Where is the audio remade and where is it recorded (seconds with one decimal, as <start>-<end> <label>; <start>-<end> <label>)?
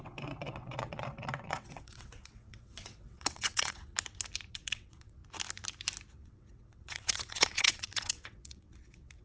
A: 0.0-3.9 remade; 3.9-4.5 recorded; 4.5-5.2 remade; 5.2-6.1 recorded; 6.1-9.2 remade